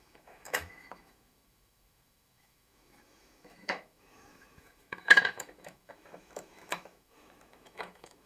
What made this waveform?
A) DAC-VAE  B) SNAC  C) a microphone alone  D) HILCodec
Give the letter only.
A